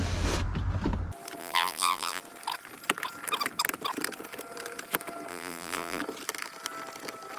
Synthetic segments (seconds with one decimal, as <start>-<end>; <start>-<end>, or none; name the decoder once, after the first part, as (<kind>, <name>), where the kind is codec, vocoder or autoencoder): 1.4-2.2 (vocoder, BigVGAN v2); 5.3-6.0